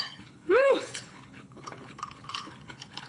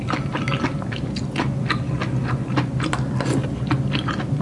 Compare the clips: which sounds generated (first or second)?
first